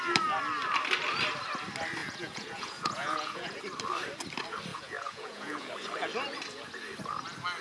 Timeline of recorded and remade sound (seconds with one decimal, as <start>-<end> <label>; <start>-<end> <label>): 0.0-2.0 recorded; 2.0-3.6 remade; 3.6-4.7 recorded; 4.7-5.7 remade; 5.7-7.6 recorded